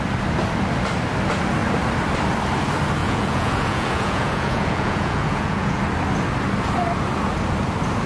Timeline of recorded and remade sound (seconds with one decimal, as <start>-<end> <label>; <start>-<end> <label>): 0.0-3.0 recorded; 3.0-5.8 remade; 5.8-8.1 recorded